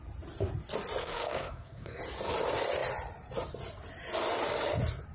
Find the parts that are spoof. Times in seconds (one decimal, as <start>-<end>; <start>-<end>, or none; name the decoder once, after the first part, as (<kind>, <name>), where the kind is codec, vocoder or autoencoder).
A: 1.0-2.0 (codec, SNAC)